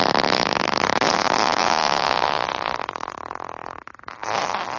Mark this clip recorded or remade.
remade